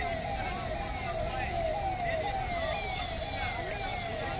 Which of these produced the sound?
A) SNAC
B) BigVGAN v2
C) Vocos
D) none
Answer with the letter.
D